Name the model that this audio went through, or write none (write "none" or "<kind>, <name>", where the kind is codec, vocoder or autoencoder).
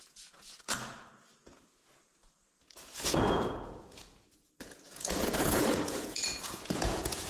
vocoder, Vocos